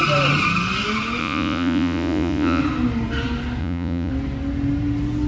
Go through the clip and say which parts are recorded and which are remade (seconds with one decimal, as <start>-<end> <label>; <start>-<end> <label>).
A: 0.0-1.2 recorded; 1.2-2.6 remade; 2.6-3.6 recorded; 3.6-4.1 remade; 4.1-5.3 recorded